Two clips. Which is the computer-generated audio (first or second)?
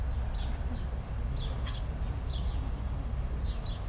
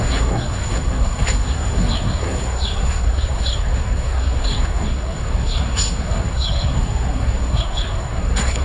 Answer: second